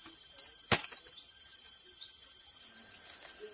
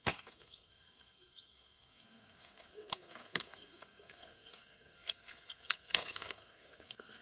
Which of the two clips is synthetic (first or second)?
second